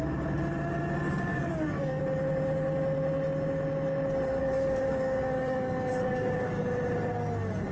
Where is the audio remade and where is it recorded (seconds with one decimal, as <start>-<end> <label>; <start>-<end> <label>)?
0.0-1.3 recorded; 1.3-2.0 remade; 2.0-4.4 recorded; 4.4-6.6 remade; 6.6-7.7 recorded